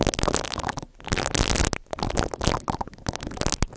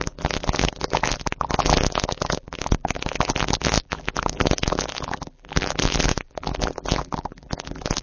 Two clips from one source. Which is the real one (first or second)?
first